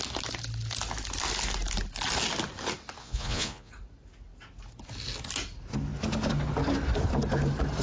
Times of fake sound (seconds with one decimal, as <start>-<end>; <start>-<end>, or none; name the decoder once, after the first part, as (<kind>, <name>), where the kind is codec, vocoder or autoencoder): 3.0-3.7 (vocoder, Vocos)